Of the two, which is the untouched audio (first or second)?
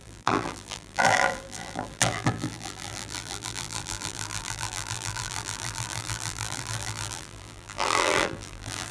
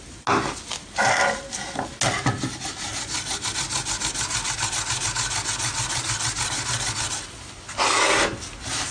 second